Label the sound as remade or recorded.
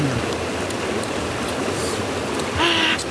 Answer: recorded